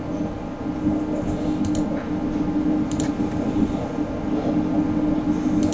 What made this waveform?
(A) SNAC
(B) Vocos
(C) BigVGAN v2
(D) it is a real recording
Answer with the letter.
D